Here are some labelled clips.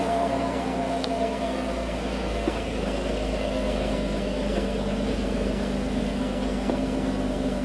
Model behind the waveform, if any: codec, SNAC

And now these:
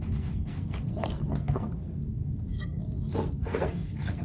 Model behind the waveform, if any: codec, SNAC